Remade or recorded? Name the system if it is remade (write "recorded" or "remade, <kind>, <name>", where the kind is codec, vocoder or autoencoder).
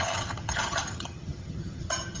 remade, vocoder, HiFi-GAN